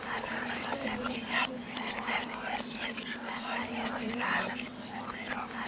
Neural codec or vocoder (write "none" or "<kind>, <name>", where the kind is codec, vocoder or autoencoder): none